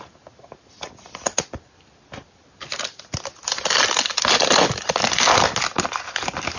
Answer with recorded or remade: recorded